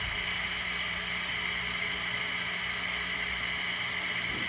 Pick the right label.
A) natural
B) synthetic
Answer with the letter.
A